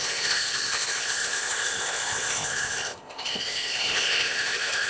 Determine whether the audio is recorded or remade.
remade